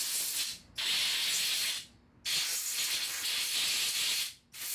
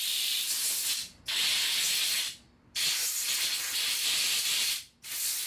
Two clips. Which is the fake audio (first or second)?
second